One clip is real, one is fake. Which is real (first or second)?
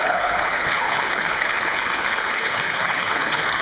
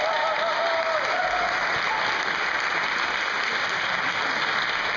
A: second